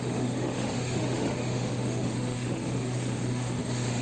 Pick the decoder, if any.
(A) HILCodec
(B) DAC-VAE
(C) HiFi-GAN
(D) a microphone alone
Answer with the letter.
B